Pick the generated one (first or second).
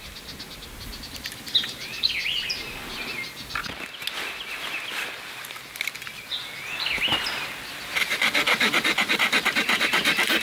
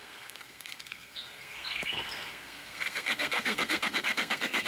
second